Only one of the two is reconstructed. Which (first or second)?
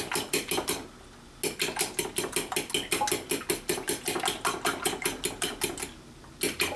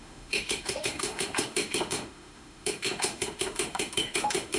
second